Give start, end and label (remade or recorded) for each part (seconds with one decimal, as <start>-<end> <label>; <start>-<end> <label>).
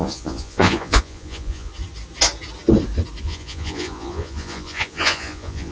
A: 0.0-1.7 remade; 1.7-3.2 recorded; 3.2-5.7 remade